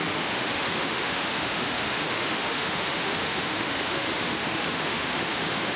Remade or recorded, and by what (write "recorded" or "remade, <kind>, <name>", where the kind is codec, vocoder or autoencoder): remade, autoencoder, DAC-VAE